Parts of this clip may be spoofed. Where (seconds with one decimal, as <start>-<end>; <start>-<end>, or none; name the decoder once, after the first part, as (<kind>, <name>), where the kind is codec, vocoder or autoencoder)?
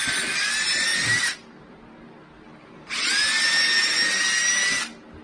none